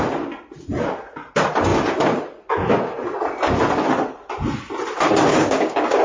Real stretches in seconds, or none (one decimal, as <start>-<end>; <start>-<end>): 0.0-5.3